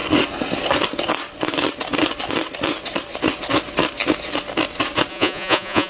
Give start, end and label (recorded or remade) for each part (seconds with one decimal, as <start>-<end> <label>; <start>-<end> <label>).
0.0-5.1 recorded; 5.1-5.9 remade